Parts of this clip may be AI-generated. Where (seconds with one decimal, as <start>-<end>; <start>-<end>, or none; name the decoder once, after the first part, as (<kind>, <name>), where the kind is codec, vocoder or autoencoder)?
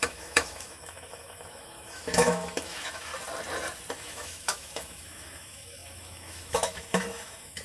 0.0-3.1 (autoencoder, DAC-VAE); 3.9-7.6